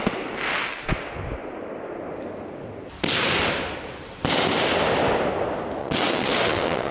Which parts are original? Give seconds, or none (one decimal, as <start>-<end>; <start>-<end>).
0.0-5.8